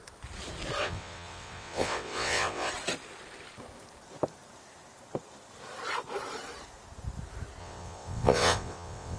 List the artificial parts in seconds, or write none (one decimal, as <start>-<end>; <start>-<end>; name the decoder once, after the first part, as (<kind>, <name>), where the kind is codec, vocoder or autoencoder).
0.8-2.7 (vocoder, WaveNeXt); 7.6-9.2